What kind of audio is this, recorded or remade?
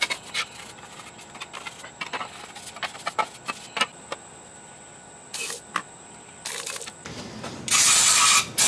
recorded